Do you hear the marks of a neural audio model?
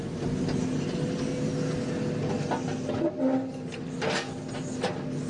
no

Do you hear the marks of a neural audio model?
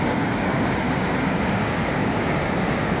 yes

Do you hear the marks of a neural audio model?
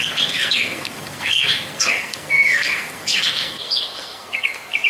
yes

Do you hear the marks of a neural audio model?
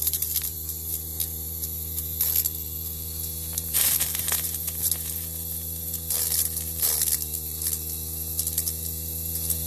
yes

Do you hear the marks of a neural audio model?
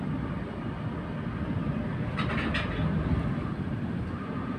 no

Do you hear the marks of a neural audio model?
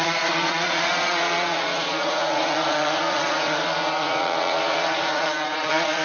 yes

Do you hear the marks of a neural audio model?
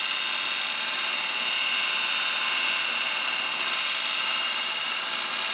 no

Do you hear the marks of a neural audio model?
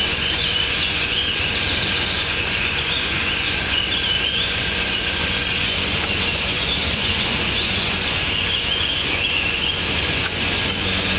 yes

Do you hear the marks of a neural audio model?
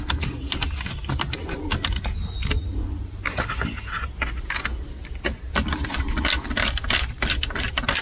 no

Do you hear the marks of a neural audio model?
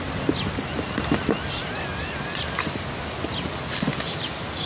no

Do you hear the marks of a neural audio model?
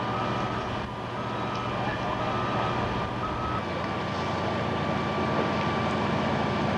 no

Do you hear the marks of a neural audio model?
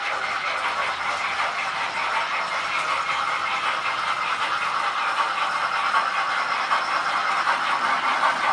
no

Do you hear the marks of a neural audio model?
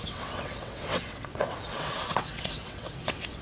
yes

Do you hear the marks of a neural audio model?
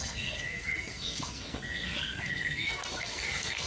yes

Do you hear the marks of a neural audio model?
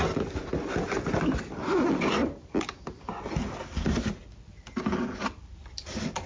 no